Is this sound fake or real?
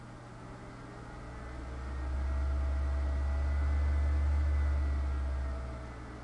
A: real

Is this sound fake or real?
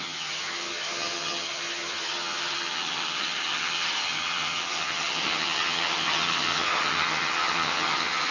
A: fake